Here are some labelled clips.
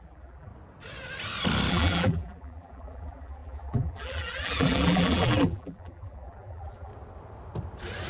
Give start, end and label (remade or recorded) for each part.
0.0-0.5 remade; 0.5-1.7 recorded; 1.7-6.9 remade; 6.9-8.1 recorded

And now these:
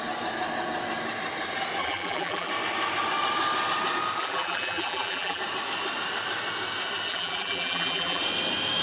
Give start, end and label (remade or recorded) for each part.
0.0-1.8 recorded; 1.8-2.5 remade; 2.5-4.2 recorded; 4.2-5.4 remade; 5.4-7.1 recorded; 7.1-8.2 remade; 8.2-8.8 recorded

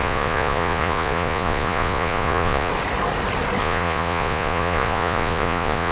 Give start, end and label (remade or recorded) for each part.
0.0-2.7 remade; 2.7-3.6 recorded; 3.6-5.9 remade